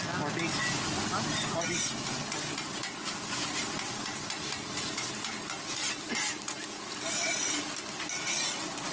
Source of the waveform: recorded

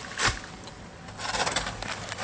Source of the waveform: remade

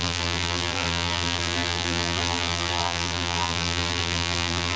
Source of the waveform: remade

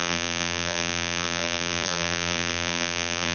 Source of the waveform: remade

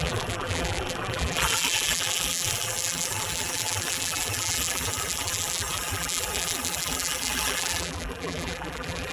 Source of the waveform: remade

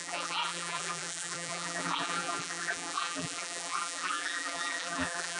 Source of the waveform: remade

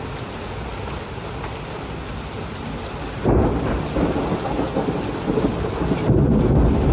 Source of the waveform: recorded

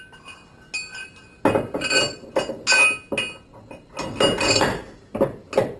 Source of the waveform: recorded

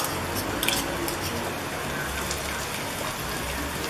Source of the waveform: recorded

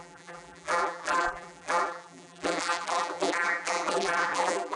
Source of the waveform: remade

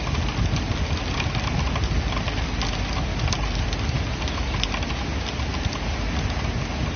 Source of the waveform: recorded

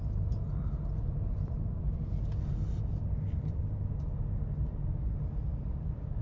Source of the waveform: recorded